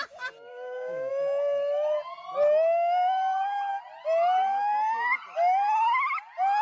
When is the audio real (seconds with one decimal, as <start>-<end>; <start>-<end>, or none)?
0.0-0.5; 1.1-6.6